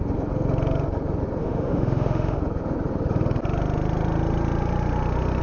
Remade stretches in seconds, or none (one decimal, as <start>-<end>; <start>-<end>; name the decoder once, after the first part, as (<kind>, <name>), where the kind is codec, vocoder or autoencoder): 1.4-2.4 (autoencoder, DAC-VAE)